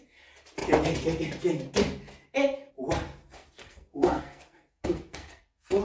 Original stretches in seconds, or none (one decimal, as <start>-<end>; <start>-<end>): 0.0-3.2